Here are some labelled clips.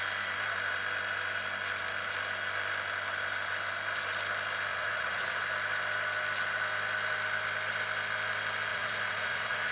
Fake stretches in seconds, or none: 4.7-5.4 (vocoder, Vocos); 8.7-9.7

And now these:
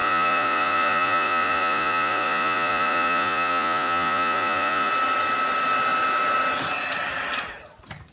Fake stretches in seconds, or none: 0.0-4.9 (vocoder, Vocos)

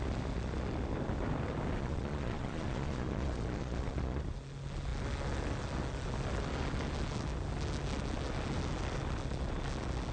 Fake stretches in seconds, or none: 1.8-4.2 (vocoder, Vocos)

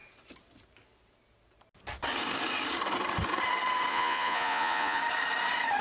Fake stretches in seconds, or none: 3.9-5.0 (vocoder, Vocos)